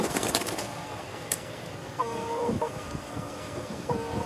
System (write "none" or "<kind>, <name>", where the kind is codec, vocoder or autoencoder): codec, SNAC